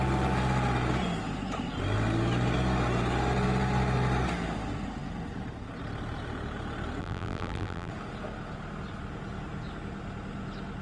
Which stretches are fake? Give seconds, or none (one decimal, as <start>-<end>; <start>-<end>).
7.0-7.9